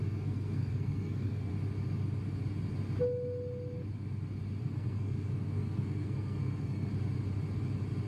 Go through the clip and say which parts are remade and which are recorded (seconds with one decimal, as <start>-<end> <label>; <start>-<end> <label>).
0.0-1.5 remade; 1.5-4.6 recorded; 4.6-6.9 remade; 6.9-8.1 recorded